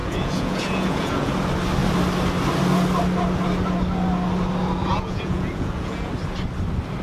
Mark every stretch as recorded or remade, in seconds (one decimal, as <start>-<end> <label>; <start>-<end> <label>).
0.0-1.3 remade; 1.3-4.8 recorded; 4.8-6.1 remade; 6.1-7.0 recorded